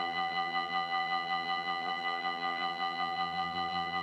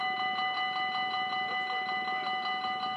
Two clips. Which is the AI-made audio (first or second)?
first